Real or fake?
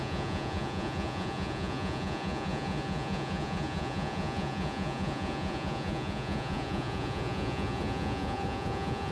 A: fake